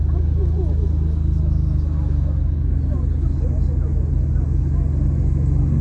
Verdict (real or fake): real